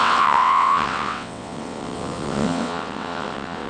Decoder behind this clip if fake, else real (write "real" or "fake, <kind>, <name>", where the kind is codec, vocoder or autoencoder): fake, vocoder, WaveNeXt